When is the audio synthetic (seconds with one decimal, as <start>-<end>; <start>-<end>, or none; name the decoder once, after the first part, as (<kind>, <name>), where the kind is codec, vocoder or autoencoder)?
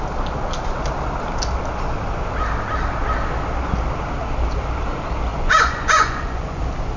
5.3-6.6 (vocoder, Vocos)